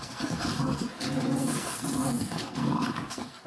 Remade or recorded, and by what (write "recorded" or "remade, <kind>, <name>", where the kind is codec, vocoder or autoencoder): remade, codec, SNAC